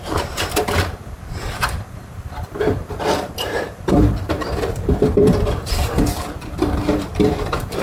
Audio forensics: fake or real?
fake